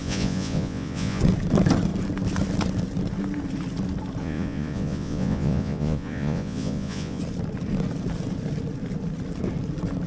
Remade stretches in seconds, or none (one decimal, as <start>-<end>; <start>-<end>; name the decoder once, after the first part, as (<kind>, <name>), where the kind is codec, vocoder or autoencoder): 0.0-1.2 (vocoder, Vocos); 4.2-7.2